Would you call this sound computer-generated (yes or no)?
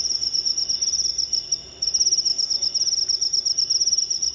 no